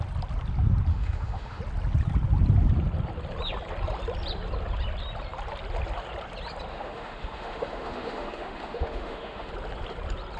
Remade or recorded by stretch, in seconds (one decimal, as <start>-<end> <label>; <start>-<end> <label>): 0.0-0.9 recorded; 0.9-1.6 remade; 1.6-6.7 recorded; 6.7-9.5 remade; 9.5-10.4 recorded